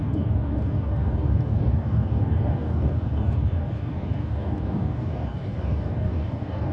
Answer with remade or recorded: remade